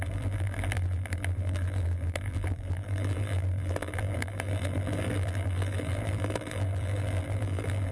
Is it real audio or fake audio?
fake